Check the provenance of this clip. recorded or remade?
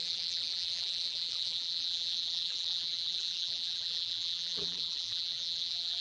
remade